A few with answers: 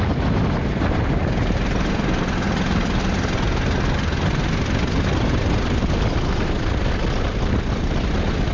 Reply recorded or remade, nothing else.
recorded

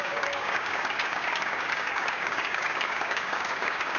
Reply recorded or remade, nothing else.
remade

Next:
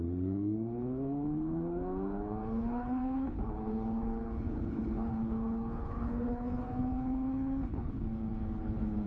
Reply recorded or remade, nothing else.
remade